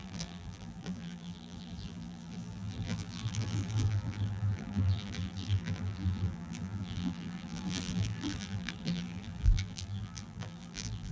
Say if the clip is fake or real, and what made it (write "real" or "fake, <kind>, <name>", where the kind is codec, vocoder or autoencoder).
fake, vocoder, BigVGAN v2